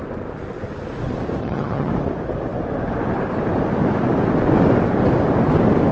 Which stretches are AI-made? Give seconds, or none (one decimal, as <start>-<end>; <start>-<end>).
1.4-1.9